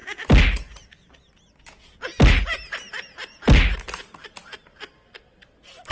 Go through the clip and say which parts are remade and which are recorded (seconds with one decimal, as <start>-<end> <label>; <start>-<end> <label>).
0.0-1.6 recorded; 1.6-2.1 remade; 2.1-5.9 recorded